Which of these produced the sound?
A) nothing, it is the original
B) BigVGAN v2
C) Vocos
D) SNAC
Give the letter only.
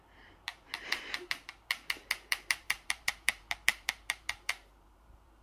B